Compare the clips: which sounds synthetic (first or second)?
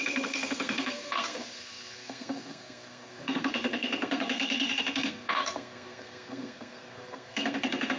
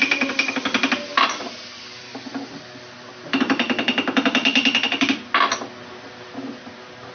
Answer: first